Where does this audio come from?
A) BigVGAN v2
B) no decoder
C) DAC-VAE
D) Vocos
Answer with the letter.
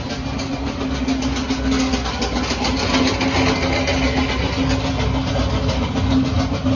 B